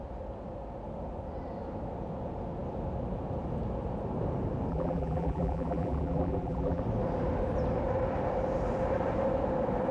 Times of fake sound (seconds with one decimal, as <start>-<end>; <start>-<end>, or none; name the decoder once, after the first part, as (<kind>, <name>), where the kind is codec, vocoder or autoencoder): 4.7-6.8 (vocoder, BigVGAN v2)